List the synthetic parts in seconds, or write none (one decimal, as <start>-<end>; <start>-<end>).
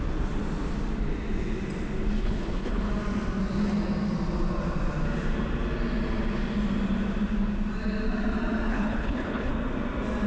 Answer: 2.2-2.9; 8.7-9.5